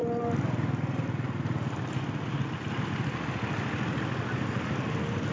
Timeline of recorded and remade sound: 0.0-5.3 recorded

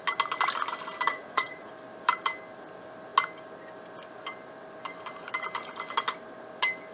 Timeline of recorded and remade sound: 0.0-1.1 recorded; 1.1-1.7 remade; 1.7-6.9 recorded

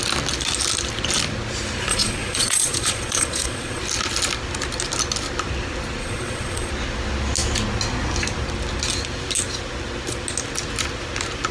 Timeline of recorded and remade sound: 0.0-1.9 recorded; 1.9-3.8 remade; 3.8-6.0 recorded; 6.0-6.7 remade; 6.7-11.5 recorded

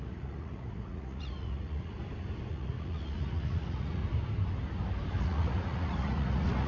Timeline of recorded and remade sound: 0.0-2.0 remade; 2.0-2.5 recorded; 2.5-4.0 remade; 4.0-5.2 recorded; 5.2-6.7 remade

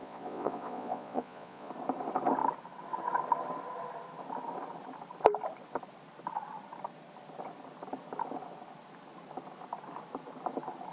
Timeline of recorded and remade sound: 0.0-1.7 remade; 1.7-10.9 recorded

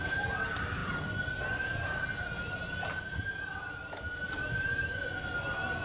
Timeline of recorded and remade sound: 0.0-5.8 recorded